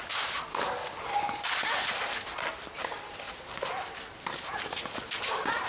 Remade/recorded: recorded